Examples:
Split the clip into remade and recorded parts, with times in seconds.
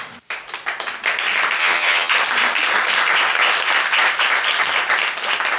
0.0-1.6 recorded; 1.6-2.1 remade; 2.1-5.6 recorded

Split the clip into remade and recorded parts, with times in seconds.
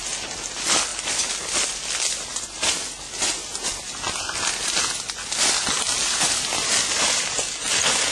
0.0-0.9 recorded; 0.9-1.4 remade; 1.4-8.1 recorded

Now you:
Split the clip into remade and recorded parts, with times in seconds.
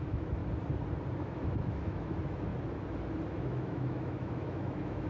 0.0-0.4 remade; 0.4-1.2 recorded; 1.2-2.5 remade; 2.5-3.3 recorded; 3.3-5.1 remade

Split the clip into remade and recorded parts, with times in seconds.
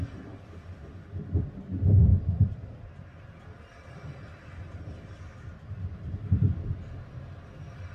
0.0-7.9 recorded